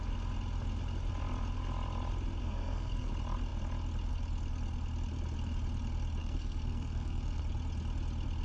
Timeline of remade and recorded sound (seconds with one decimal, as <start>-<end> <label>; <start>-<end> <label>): 0.0-2.4 recorded; 2.4-3.1 remade; 3.1-6.2 recorded; 6.2-7.4 remade; 7.4-8.4 recorded